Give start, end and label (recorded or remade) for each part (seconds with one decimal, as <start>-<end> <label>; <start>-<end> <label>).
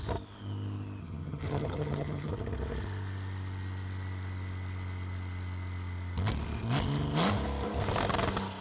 0.0-1.0 recorded; 1.0-2.3 remade; 2.3-8.6 recorded